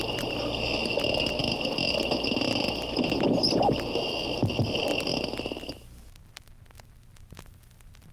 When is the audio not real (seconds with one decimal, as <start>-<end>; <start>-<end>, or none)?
none